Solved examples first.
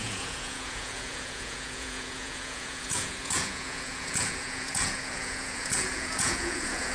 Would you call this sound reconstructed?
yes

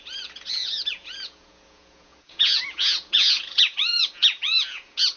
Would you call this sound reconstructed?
yes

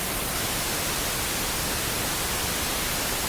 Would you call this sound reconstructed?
no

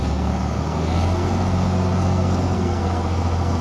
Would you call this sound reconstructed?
yes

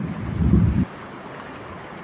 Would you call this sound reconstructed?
no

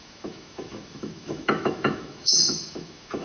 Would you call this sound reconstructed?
yes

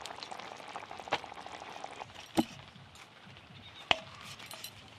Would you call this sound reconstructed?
no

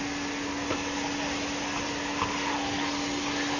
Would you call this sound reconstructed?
no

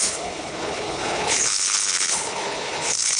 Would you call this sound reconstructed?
yes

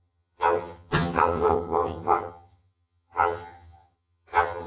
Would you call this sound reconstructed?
yes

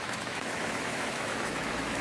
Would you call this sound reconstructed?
yes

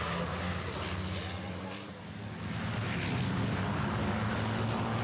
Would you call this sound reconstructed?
no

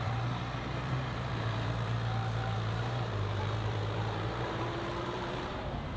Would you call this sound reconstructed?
yes